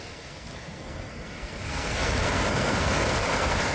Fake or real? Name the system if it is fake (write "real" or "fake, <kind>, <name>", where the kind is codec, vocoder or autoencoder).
fake, codec, SNAC